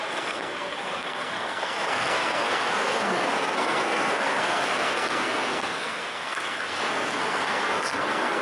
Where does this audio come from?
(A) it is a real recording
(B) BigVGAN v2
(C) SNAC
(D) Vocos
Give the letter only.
C